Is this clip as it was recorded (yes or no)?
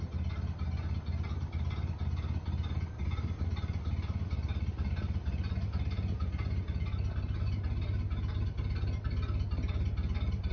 yes